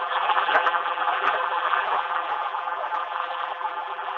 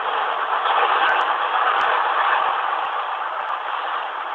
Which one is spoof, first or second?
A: first